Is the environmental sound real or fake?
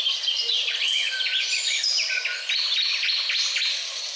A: real